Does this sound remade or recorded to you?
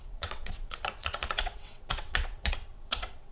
remade